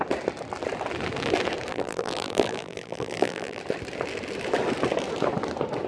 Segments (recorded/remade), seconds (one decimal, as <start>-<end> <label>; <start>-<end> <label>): 0.0-1.7 recorded; 1.7-3.6 remade; 3.6-5.9 recorded